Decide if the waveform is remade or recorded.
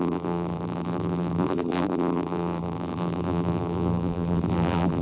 remade